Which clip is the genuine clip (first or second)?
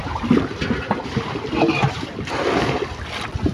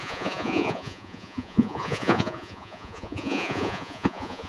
first